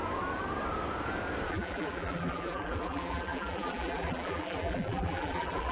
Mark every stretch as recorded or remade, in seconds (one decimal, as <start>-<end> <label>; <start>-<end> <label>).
0.0-1.5 recorded; 1.5-5.7 remade